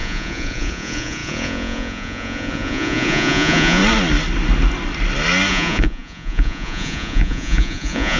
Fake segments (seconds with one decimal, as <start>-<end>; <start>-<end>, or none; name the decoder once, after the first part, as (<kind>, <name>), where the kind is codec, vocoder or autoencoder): 0.0-3.8 (vocoder, Vocos); 5.5-8.2